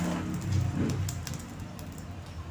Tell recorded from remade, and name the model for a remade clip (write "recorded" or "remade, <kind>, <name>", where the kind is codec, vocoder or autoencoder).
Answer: recorded